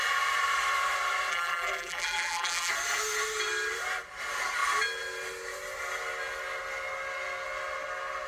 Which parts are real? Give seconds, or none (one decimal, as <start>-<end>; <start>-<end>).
0.0-1.3; 2.7-8.3